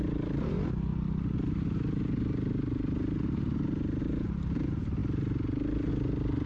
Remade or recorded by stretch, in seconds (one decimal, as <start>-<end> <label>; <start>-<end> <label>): 0.0-6.5 recorded